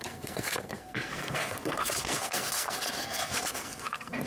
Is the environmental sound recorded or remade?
remade